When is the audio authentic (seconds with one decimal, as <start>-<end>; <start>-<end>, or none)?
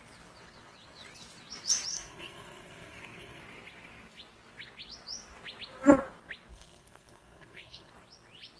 0.0-1.9; 3.4-6.5; 7.9-8.6